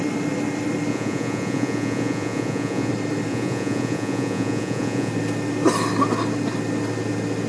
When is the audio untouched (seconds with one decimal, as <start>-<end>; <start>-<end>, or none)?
0.0-0.9; 2.9-3.3; 5.1-7.5